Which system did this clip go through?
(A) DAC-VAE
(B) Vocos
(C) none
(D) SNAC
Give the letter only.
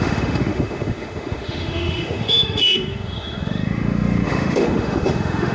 A